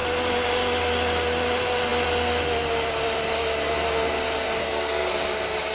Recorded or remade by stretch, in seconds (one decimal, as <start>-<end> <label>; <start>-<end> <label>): 0.0-4.6 recorded; 4.6-5.1 remade; 5.1-5.7 recorded

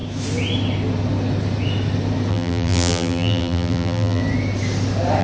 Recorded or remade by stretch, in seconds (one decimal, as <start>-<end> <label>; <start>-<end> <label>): 0.0-2.3 recorded; 2.3-4.2 remade; 4.2-5.2 recorded

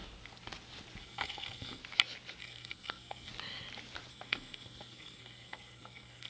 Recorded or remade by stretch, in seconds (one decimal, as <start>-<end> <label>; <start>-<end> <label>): 0.0-1.0 recorded; 1.0-1.8 remade; 1.8-2.4 recorded; 2.4-3.3 remade; 3.3-4.1 recorded; 4.1-6.3 remade

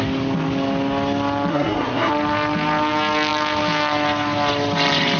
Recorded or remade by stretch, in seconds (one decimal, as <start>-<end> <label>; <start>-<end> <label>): 0.0-1.5 recorded; 1.5-2.1 remade; 2.1-5.2 recorded

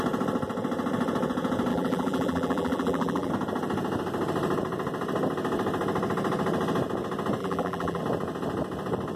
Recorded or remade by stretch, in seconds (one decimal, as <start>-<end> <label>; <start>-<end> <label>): 0.0-1.7 recorded; 1.7-3.3 remade; 3.3-7.4 recorded; 7.4-8.0 remade; 8.0-9.2 recorded

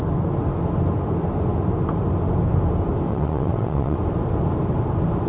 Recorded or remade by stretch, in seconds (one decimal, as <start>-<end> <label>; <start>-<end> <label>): 0.0-3.1 recorded; 3.1-4.0 remade; 4.0-5.3 recorded

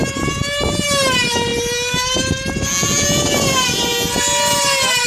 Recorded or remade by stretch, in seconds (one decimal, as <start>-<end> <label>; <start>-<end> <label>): 0.0-5.1 recorded

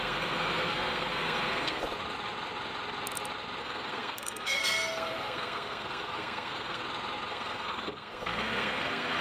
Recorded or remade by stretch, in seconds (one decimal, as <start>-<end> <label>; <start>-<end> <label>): 0.0-1.8 remade; 1.8-3.6 recorded; 3.6-6.8 remade; 6.8-7.3 recorded; 7.3-9.2 remade